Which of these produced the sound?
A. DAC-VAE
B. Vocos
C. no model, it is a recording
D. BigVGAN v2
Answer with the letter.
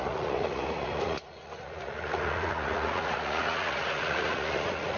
B